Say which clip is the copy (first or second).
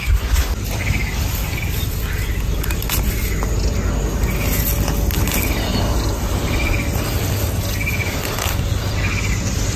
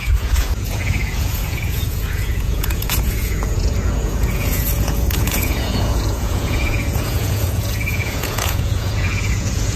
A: second